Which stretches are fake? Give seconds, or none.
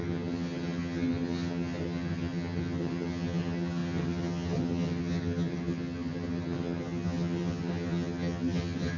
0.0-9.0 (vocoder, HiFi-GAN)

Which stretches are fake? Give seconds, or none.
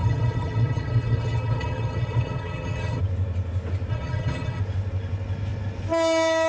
0.0-3.0 (vocoder, HiFi-GAN); 3.9-4.6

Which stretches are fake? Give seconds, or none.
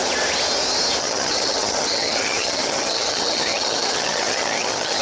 1.0-5.0 (vocoder, HiFi-GAN)